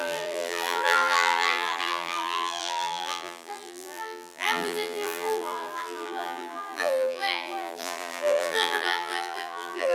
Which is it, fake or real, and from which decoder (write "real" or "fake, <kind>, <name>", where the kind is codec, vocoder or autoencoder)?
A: fake, vocoder, BigVGAN v2